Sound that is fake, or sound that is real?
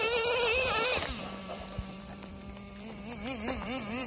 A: fake